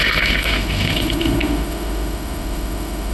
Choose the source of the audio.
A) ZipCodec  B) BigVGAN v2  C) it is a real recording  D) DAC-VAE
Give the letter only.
D